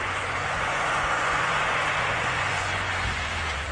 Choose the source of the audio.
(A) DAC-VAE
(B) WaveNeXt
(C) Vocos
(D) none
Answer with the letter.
C